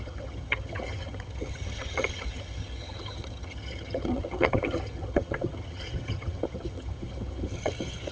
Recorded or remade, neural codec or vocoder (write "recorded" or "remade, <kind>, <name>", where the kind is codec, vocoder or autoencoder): remade, vocoder, HiFi-GAN